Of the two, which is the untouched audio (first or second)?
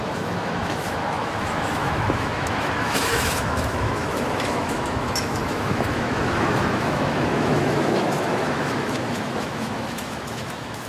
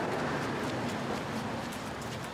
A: second